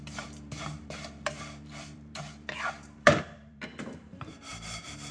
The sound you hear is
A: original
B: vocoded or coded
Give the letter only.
B